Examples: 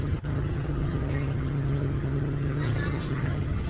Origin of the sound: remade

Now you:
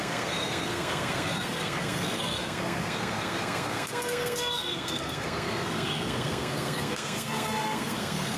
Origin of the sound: remade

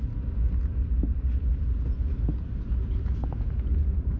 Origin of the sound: recorded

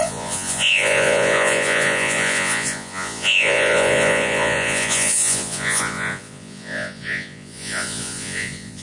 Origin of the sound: remade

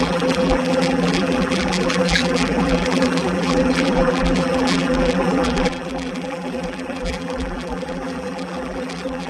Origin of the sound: remade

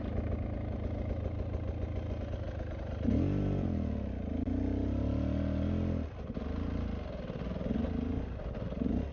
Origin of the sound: recorded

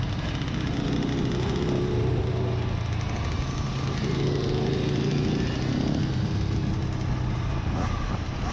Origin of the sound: recorded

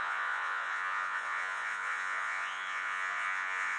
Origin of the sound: remade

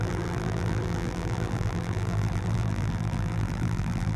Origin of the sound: remade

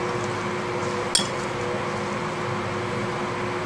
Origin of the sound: recorded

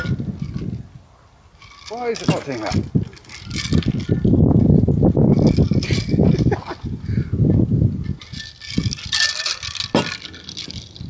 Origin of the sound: recorded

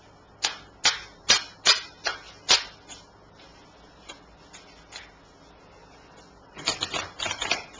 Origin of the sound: recorded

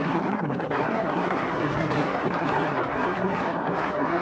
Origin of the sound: remade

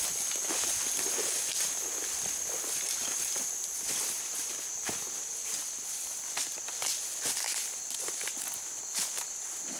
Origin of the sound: recorded